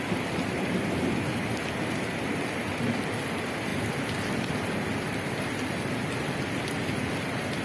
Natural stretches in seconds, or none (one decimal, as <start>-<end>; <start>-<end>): 0.0-7.6